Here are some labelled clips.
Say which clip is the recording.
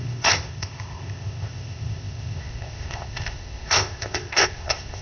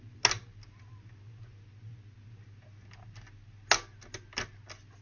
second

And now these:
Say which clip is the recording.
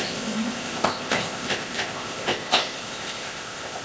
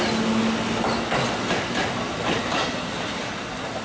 second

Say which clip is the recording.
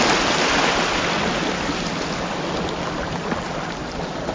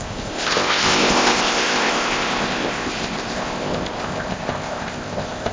first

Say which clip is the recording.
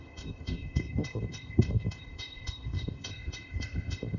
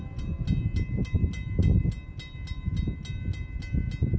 second